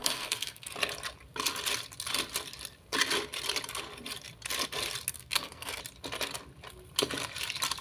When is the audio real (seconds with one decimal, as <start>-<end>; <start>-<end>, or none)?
0.7-5.1; 5.8-7.8